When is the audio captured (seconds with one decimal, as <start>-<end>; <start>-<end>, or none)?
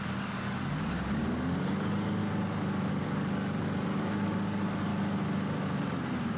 2.2-2.9; 4.9-6.4